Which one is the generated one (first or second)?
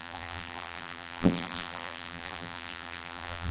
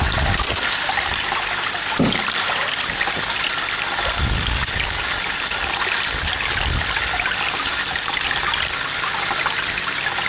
first